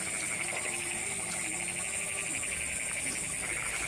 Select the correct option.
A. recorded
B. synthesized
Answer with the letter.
A